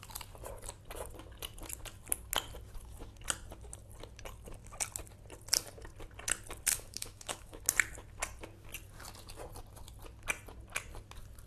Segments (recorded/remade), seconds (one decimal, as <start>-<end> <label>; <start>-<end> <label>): 0.0-6.7 recorded; 6.7-7.6 remade; 7.6-11.5 recorded